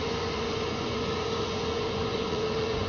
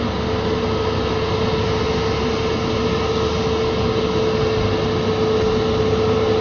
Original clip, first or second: second